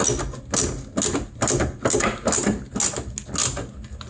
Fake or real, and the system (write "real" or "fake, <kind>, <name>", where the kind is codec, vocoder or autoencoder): real